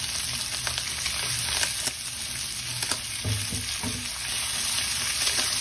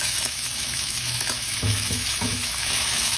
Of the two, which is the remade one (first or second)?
second